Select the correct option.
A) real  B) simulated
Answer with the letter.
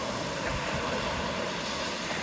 A